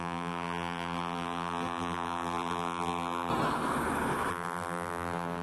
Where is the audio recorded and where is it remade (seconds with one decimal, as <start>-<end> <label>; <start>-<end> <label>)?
0.0-3.3 remade; 3.3-4.3 recorded; 4.3-5.4 remade